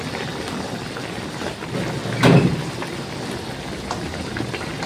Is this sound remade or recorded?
recorded